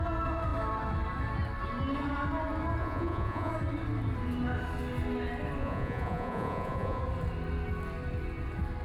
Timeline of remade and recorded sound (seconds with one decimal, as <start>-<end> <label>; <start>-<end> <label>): 0.0-2.8 recorded; 2.8-3.5 remade; 3.5-5.6 recorded; 5.6-7.0 remade; 7.0-8.8 recorded